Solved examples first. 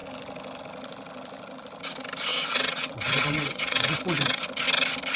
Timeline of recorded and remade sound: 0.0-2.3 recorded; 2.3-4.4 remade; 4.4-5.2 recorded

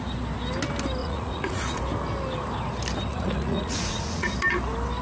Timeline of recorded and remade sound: 0.0-1.0 recorded; 1.0-1.8 remade; 1.8-3.1 recorded; 3.1-4.3 remade; 4.3-5.0 recorded